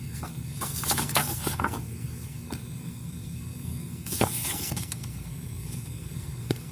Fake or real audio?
fake